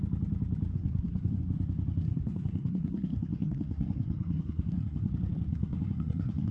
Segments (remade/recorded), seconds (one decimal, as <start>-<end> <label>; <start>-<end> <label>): 0.0-0.7 recorded; 0.7-1.4 remade; 1.4-2.0 recorded; 2.0-5.1 remade; 5.1-5.5 recorded; 5.5-6.5 remade